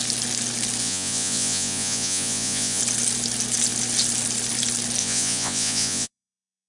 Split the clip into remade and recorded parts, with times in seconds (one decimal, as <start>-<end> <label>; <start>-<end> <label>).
0.0-0.8 recorded; 0.8-2.8 remade; 2.8-5.0 recorded; 5.0-6.7 remade